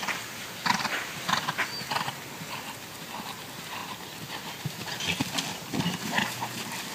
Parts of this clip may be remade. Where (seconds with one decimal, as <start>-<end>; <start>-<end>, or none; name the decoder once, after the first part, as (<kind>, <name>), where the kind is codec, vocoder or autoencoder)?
none